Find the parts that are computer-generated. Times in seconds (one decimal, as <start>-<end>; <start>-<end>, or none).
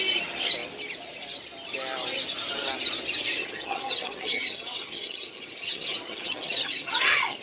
3.4-7.4